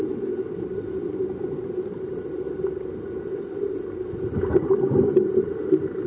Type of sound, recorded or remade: recorded